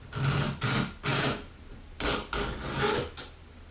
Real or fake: real